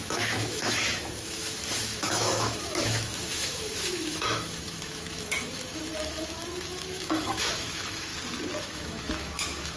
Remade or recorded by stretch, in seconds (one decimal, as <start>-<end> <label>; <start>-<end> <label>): 0.0-8.1 remade; 8.1-8.6 recorded; 8.6-9.8 remade